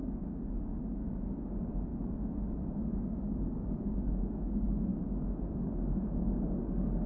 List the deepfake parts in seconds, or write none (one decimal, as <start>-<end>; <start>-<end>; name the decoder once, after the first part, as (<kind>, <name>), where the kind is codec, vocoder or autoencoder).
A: 0.0-7.1 (codec, DAC)